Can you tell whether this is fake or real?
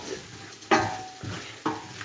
real